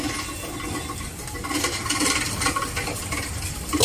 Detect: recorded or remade recorded